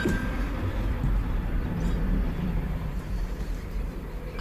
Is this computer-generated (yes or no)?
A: yes